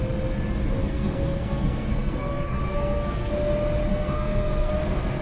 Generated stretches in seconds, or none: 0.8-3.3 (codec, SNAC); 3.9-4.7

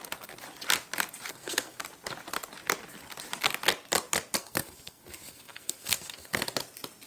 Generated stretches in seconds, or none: 1.3-1.8 (codec, SNAC); 4.4-6.4